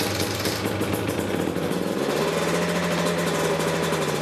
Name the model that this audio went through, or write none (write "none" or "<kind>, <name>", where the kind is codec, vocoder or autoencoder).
none